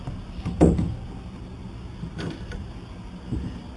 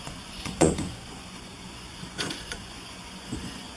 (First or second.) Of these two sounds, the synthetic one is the second